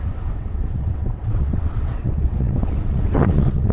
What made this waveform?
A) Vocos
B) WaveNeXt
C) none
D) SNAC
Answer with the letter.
B